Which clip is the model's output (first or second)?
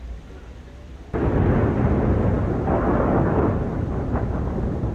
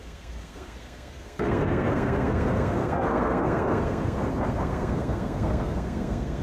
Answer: second